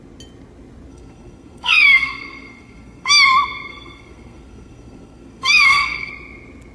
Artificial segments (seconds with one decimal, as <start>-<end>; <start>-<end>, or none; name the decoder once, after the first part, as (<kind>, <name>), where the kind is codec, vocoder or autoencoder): 0.9-3.1 (codec, SNAC); 3.7-6.1